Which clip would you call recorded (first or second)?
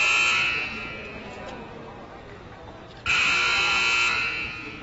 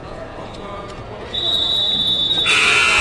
first